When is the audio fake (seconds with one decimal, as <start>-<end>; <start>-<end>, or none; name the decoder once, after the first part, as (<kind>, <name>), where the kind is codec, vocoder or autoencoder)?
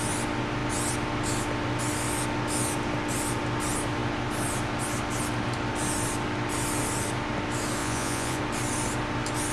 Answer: 7.8-8.4 (vocoder, Vocos)